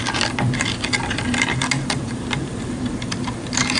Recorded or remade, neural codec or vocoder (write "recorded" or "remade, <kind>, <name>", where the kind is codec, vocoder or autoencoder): remade, vocoder, BigVGAN v2